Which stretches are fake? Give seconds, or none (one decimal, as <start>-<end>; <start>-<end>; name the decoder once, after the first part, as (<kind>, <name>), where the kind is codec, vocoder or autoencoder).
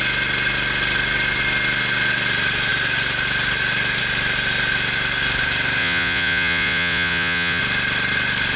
5.8-7.6 (vocoder, Vocos)